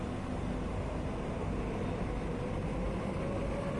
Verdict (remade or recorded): recorded